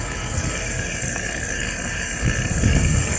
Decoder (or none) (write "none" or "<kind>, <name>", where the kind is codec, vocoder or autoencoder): codec, DAC